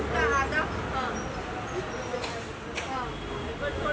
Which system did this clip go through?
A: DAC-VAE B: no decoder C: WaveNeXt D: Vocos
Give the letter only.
B